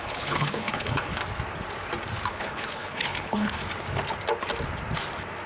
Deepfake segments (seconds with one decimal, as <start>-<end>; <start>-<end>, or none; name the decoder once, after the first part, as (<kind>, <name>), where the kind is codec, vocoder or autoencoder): 0.0-1.2 (codec, HILCodec); 2.3-3.6